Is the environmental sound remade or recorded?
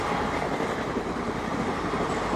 recorded